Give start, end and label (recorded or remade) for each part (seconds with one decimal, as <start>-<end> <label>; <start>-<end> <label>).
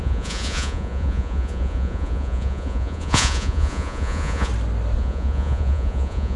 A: 0.0-4.5 remade; 4.5-5.0 recorded; 5.0-6.4 remade